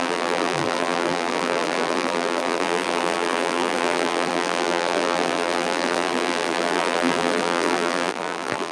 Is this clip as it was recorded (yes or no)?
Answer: no